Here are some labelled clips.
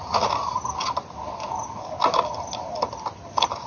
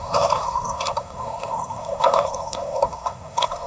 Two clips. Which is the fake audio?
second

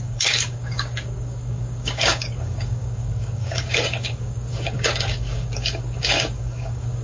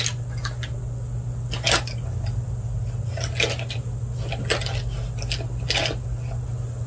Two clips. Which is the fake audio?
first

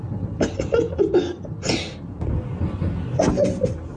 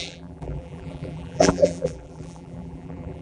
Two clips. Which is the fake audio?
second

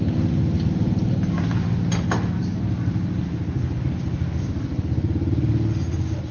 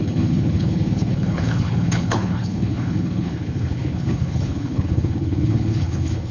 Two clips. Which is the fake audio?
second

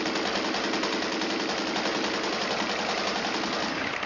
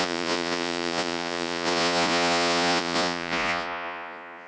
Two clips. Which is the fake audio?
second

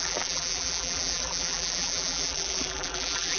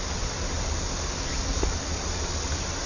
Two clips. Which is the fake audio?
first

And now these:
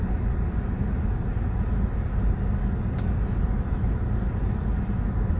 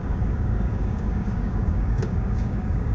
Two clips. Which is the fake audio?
second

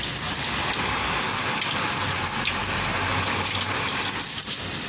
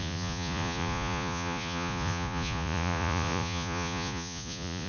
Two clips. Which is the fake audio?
second